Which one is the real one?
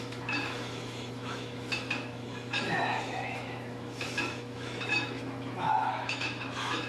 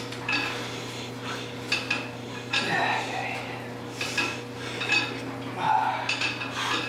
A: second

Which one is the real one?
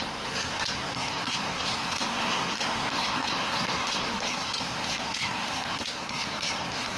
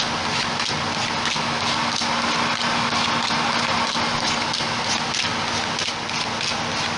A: second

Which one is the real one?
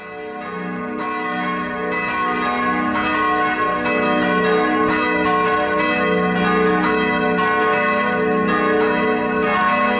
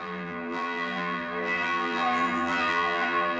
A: first